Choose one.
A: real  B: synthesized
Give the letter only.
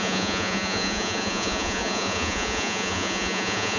B